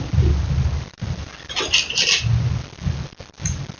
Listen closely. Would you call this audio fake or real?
real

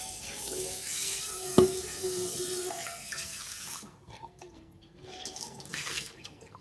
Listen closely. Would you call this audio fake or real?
fake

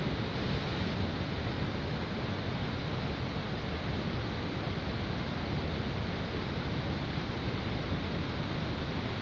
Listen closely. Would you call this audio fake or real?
real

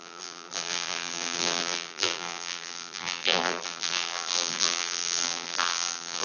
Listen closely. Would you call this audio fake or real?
fake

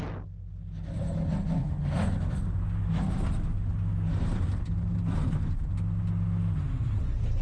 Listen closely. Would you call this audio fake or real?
real